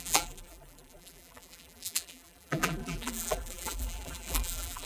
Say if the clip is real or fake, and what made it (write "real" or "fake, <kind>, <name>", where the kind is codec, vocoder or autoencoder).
fake, vocoder, BigVGAN v2